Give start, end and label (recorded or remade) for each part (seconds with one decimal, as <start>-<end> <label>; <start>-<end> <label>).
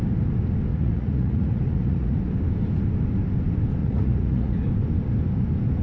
0.0-0.7 recorded; 0.7-2.2 remade; 2.2-3.8 recorded; 3.8-4.6 remade; 4.6-5.8 recorded